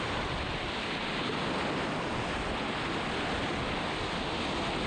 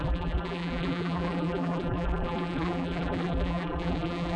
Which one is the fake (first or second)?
second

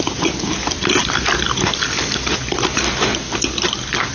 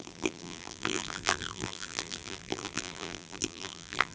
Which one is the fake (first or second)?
second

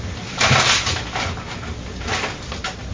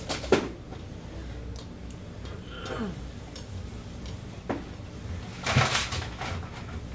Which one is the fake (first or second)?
first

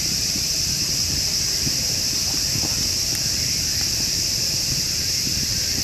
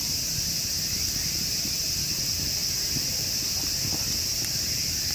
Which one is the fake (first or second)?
first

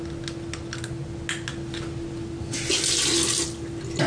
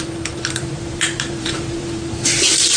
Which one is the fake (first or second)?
second